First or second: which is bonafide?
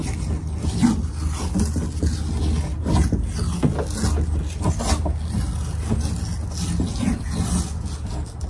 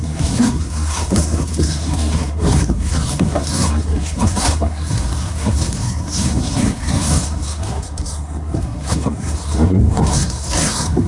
first